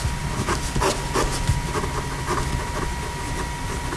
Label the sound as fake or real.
real